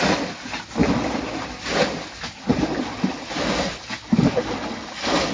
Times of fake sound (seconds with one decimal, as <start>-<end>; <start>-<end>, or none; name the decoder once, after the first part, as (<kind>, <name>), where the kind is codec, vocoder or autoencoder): none